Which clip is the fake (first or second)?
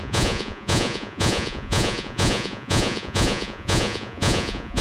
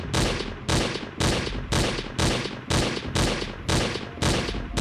first